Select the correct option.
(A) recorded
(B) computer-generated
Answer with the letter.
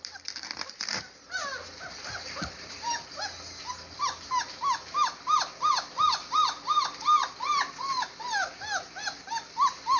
A